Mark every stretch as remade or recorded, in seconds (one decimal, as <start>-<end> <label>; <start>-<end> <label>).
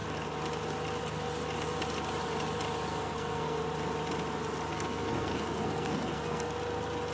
0.0-2.9 recorded; 2.9-3.6 remade; 3.6-4.7 recorded; 4.7-6.5 remade; 6.5-7.1 recorded